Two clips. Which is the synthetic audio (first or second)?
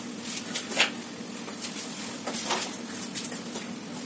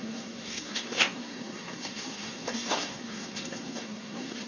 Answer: second